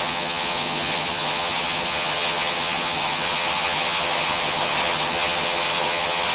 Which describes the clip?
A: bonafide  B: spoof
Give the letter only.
B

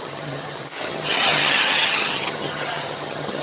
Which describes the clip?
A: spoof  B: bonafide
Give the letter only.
A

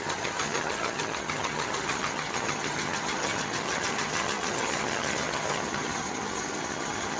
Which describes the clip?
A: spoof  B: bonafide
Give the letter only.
A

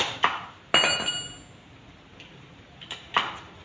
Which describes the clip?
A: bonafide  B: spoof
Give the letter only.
A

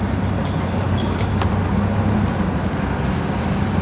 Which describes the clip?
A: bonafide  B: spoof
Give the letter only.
A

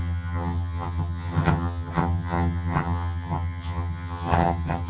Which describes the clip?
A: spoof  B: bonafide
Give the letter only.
A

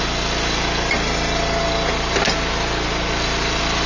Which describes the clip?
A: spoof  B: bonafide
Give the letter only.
B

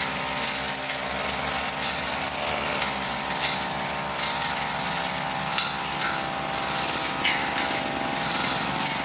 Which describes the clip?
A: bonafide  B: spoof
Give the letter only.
A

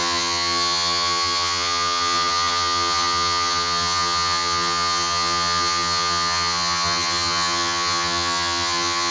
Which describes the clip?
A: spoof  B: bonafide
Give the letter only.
A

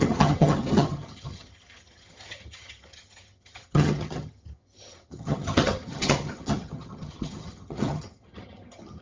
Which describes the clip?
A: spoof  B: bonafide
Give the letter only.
A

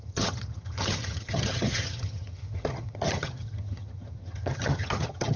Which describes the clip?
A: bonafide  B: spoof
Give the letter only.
B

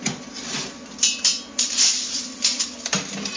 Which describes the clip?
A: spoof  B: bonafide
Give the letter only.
B